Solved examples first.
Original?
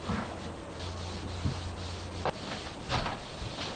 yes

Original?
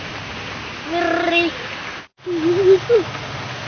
yes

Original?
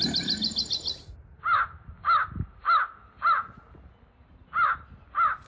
yes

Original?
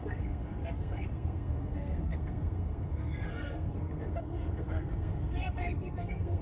no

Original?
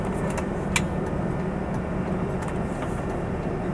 yes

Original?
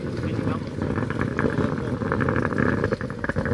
yes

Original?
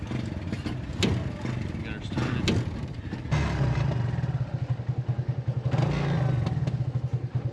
yes